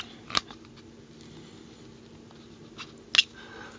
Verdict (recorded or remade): recorded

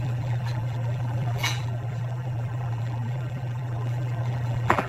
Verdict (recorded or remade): remade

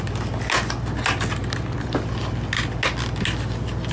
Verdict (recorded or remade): recorded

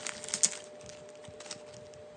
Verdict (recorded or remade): recorded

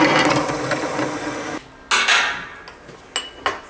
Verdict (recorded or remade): recorded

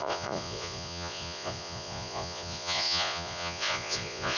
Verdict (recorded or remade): remade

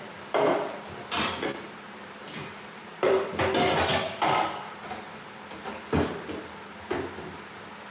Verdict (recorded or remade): recorded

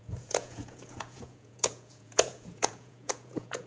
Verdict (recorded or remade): remade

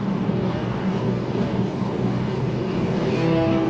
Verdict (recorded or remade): remade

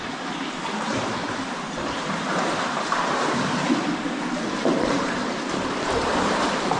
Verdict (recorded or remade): remade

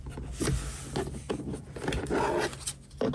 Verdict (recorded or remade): recorded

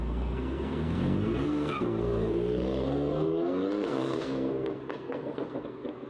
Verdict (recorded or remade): remade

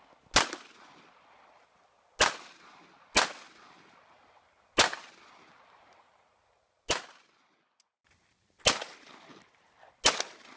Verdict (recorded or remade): recorded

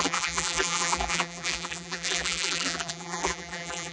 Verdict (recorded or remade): remade